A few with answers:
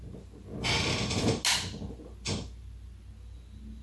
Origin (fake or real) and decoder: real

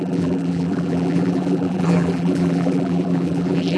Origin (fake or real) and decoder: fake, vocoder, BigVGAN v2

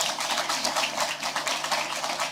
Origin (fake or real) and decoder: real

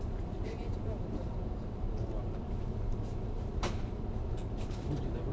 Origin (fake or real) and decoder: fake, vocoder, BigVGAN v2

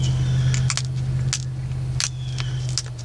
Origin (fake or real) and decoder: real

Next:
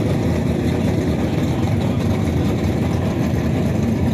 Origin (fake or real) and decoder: fake, vocoder, BigVGAN v2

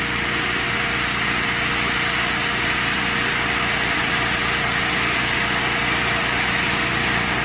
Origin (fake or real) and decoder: real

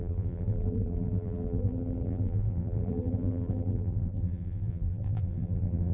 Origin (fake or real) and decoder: fake, vocoder, BigVGAN v2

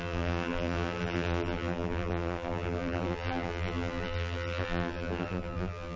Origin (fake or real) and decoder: fake, vocoder, BigVGAN v2